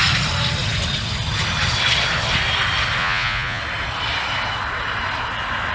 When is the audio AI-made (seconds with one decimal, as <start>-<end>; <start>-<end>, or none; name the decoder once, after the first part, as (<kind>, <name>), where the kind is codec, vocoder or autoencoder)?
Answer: 3.0-3.6 (vocoder, Vocos)